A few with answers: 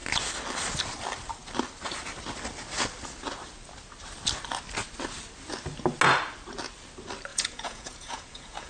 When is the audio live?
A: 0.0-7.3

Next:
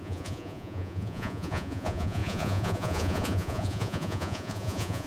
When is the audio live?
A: none

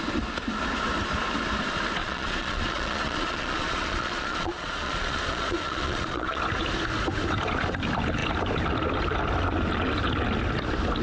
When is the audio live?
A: 0.0-2.0; 6.4-11.0

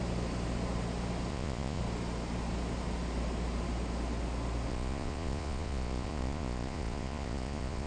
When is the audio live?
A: 0.0-1.3; 1.8-4.7

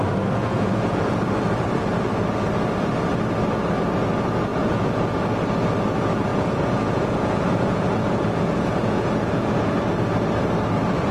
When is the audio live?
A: 0.0-0.4; 1.2-4.5; 5.1-6.3; 9.8-11.1

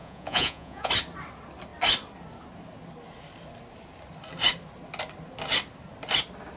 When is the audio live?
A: 0.9-6.6

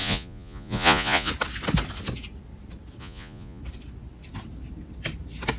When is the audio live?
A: 1.3-3.0; 3.6-5.6

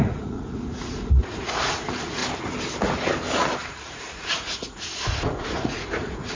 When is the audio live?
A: 2.2-3.6